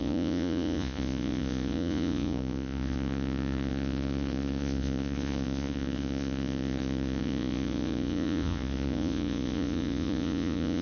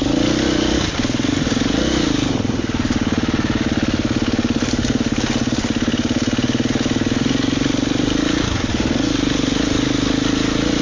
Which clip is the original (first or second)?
second